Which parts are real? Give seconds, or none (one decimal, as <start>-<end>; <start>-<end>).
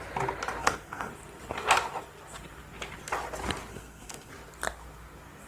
0.0-0.6; 1.1-3.7; 4.3-5.5